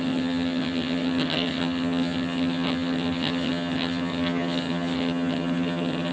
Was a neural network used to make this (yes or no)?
yes